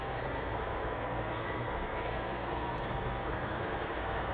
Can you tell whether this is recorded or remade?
remade